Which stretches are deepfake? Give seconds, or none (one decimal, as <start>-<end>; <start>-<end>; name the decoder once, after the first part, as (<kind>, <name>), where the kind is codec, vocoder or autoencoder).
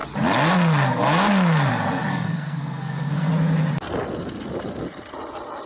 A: 2.1-3.3 (codec, SNAC)